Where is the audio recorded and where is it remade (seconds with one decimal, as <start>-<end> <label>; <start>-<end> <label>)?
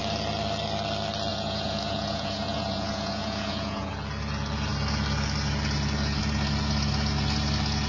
0.0-1.3 recorded; 1.3-3.9 remade; 3.9-7.9 recorded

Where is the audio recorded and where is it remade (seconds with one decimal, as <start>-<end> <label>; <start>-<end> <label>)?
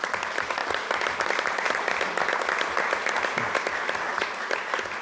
0.0-5.0 recorded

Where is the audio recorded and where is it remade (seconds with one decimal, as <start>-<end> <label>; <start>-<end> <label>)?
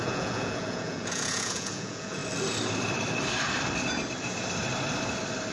0.0-2.2 remade; 2.2-5.5 recorded